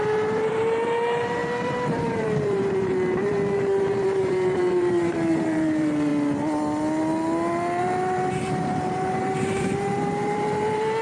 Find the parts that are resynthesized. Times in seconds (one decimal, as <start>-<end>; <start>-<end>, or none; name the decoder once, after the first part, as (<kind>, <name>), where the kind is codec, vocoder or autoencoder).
0.0-6.1 (vocoder, BigVGAN v2); 7.8-11.0